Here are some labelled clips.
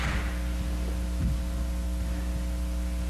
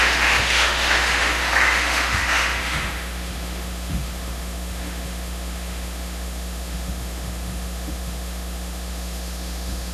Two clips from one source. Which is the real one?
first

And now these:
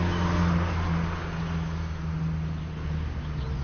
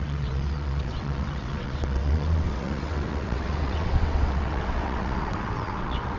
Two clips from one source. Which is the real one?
first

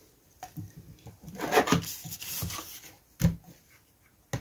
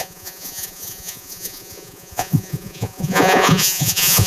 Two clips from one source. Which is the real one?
first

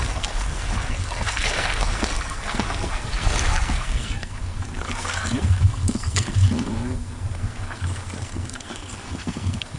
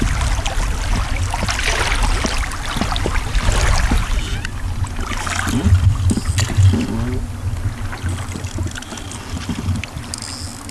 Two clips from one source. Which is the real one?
second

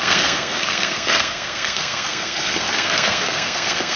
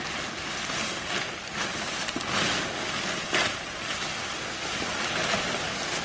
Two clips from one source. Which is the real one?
second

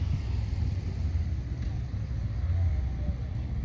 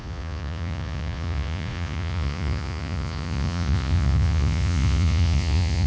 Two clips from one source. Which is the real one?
first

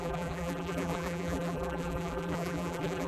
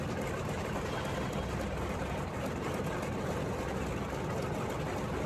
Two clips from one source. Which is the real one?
second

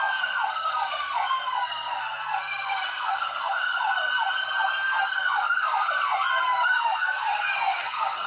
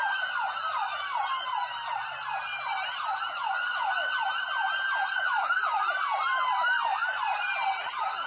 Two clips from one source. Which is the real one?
second